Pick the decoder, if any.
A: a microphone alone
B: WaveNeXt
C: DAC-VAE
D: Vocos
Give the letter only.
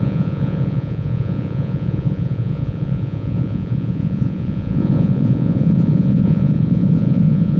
D